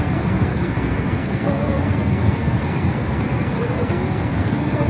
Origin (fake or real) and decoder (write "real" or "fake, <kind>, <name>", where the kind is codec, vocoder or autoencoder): fake, codec, SNAC